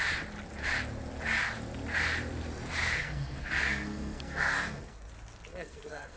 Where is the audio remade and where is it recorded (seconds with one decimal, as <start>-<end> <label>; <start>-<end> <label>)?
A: 0.0-2.8 recorded; 2.8-5.1 remade; 5.1-5.5 recorded; 5.5-6.2 remade